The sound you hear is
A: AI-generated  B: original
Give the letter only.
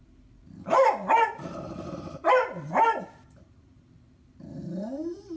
A